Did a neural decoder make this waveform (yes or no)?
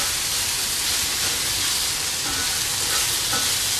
no